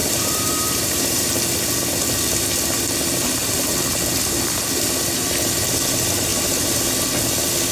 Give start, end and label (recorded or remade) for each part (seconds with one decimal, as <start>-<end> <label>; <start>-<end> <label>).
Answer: 0.0-1.3 remade; 1.3-6.3 recorded; 6.3-6.8 remade; 6.8-7.7 recorded